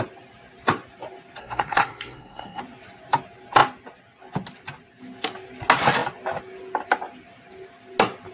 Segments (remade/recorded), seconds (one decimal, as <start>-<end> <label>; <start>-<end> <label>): 0.0-1.4 recorded; 1.4-2.6 remade; 2.6-8.3 recorded